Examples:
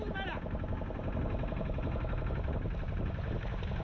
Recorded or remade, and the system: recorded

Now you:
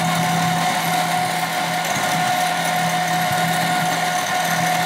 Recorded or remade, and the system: recorded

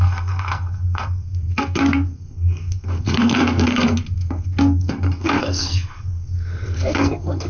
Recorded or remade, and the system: remade, codec, SNAC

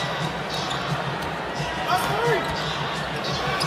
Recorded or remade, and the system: recorded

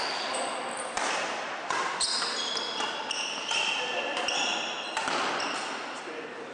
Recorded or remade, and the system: recorded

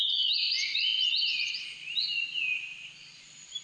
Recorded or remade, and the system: recorded